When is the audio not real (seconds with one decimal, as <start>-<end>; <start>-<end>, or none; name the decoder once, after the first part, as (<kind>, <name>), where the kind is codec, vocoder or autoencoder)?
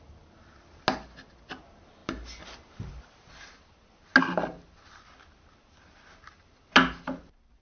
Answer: none